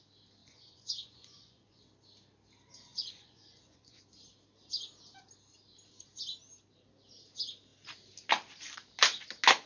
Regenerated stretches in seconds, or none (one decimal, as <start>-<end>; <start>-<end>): 0.4-1.8; 2.9-4.0